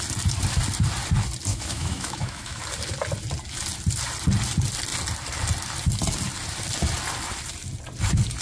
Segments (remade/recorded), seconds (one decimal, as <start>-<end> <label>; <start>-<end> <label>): 0.0-1.5 recorded; 1.5-2.6 remade; 2.6-8.4 recorded